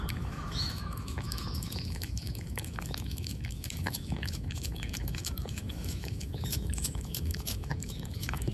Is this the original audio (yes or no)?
no